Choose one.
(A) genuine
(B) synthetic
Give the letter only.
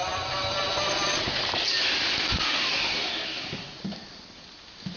A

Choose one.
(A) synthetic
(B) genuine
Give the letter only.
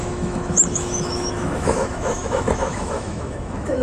A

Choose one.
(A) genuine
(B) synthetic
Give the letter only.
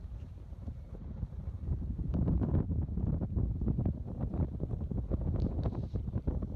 B